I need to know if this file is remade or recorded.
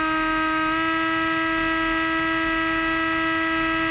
recorded